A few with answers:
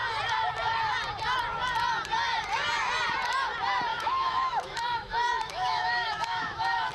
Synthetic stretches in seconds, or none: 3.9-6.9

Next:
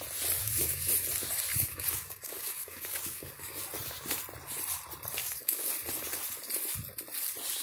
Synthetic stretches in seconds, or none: 0.4-0.9; 1.5-3.6; 5.2-5.7

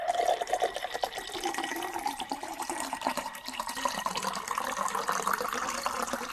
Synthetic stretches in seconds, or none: 1.7-4.1

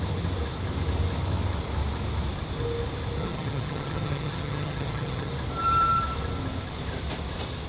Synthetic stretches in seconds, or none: 3.2-5.3

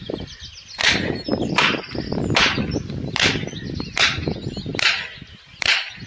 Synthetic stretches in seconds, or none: none

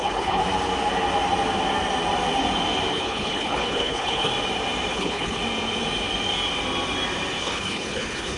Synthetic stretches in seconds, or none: 0.0-0.4; 2.9-4.3; 4.9-5.4; 7.4-8.4